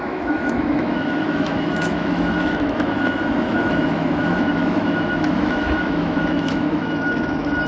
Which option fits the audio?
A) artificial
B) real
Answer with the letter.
A